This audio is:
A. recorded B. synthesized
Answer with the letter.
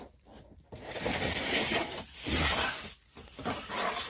B